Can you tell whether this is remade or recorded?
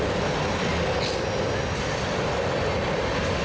recorded